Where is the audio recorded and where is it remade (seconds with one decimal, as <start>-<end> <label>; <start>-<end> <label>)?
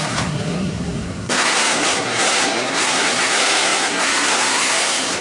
0.0-5.2 remade